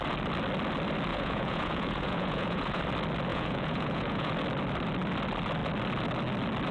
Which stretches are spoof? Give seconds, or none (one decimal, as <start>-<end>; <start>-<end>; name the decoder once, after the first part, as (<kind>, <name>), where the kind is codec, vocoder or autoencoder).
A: 1.1-2.8 (vocoder, Vocos); 3.3-4.3